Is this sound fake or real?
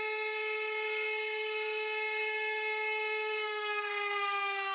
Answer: fake